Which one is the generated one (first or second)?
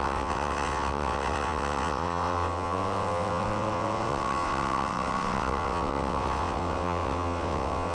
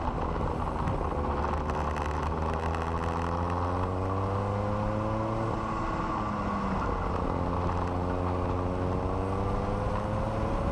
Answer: first